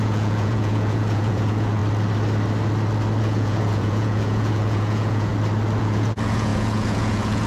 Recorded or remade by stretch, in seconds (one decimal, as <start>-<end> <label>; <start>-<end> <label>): 0.0-1.8 remade; 1.8-3.2 recorded; 3.2-5.3 remade; 5.3-5.8 recorded; 5.8-7.5 remade